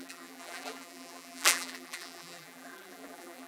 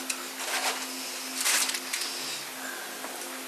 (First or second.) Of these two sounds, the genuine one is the second